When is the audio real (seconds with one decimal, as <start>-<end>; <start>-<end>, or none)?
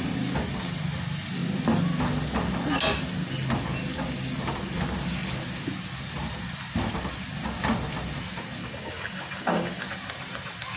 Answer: 0.0-8.6; 9.8-10.8